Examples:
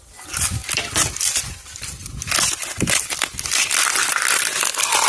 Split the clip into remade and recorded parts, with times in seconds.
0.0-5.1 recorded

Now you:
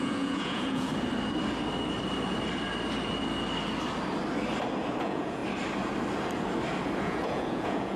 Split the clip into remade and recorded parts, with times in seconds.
0.0-0.9 remade; 0.9-5.0 recorded; 5.0-5.4 remade; 5.4-7.0 recorded; 7.0-8.0 remade